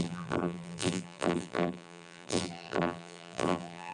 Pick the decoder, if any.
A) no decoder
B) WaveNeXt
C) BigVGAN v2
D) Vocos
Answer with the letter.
C